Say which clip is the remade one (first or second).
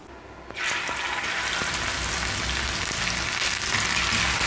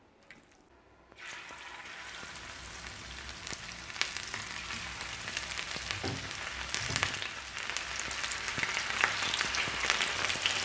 second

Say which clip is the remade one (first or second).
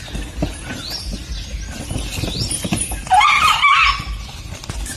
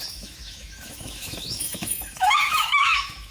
second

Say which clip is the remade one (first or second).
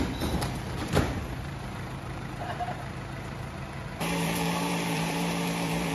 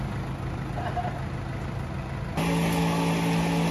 first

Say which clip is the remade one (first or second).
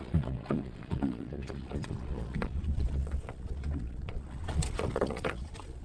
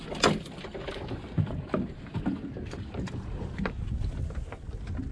first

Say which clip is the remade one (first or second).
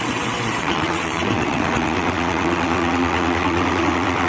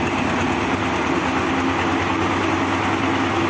first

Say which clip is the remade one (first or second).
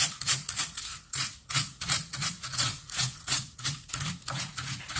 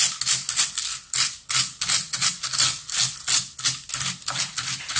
first